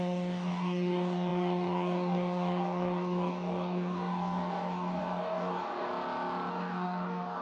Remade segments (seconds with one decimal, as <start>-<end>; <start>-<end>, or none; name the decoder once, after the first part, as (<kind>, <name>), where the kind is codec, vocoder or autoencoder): 0.0-5.9 (codec, DAC); 6.5-7.4

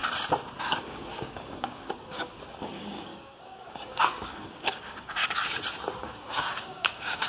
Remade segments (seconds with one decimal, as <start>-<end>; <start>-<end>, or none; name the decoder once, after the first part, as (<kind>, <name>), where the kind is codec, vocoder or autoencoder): 0.6-5.2 (codec, DAC); 6.0-7.3

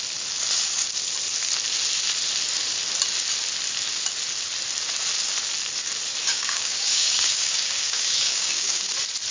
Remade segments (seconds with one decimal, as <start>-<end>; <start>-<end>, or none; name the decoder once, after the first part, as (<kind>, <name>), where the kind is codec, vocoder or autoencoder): 6.2-8.8 (codec, DAC)

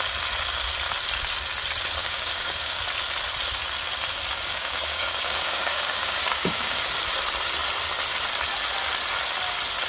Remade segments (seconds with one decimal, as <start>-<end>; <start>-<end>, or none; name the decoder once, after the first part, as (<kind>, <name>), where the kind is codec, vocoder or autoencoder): 2.0-2.8 (codec, DAC); 4.5-6.8

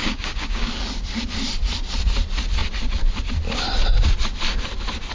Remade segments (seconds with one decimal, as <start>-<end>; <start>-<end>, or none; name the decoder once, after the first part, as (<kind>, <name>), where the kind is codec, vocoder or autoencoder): 0.0-0.7 (codec, DAC)

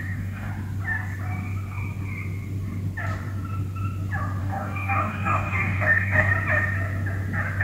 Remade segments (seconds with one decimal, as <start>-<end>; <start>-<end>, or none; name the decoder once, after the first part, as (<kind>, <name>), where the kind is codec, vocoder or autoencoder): 0.0-0.5 (codec, DAC); 4.4-6.3

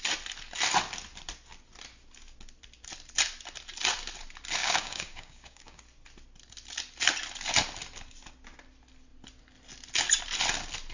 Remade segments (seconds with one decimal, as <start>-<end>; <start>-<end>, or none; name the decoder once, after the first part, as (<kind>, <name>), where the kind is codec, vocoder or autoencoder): 4.6-5.8 (codec, DAC)